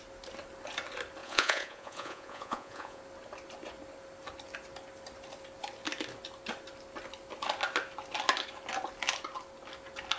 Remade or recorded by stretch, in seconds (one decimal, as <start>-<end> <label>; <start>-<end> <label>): 0.0-1.2 recorded; 1.2-3.0 remade; 3.0-10.2 recorded